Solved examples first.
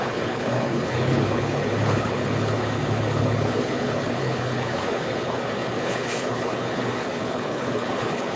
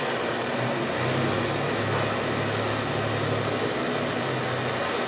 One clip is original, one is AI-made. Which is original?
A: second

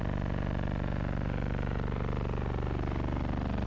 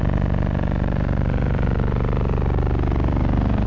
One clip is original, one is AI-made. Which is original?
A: first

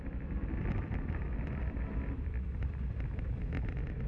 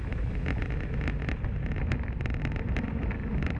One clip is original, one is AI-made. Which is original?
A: second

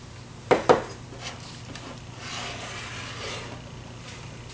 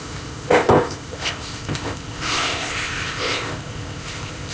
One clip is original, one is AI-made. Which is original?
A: first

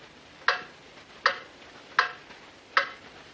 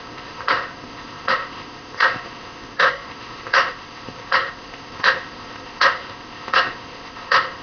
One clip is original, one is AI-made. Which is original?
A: first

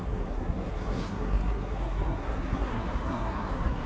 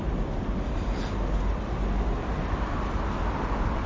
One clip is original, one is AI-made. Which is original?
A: second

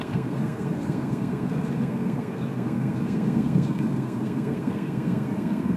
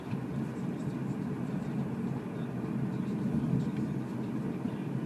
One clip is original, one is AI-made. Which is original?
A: second